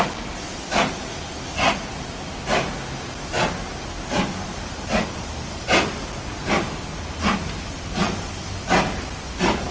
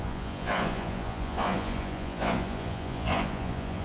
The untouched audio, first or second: first